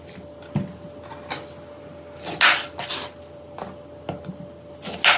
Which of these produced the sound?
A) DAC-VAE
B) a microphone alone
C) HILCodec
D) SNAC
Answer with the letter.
B